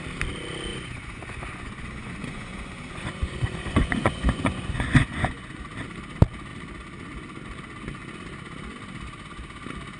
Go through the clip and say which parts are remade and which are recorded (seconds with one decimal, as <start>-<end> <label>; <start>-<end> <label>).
0.0-0.7 recorded; 0.7-5.6 remade; 5.6-10.0 recorded